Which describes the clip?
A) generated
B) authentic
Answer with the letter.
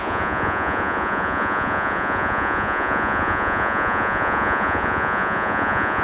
A